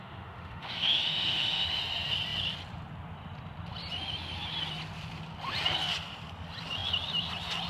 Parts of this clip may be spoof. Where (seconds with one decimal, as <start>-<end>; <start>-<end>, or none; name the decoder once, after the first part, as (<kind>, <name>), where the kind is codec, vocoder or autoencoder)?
0.0-1.8 (autoencoder, DAC-VAE)